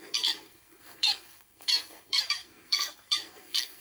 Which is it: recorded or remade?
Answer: remade